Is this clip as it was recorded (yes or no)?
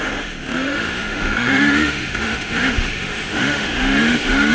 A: no